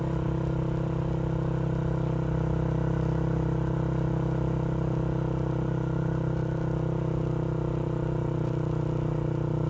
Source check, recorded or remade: recorded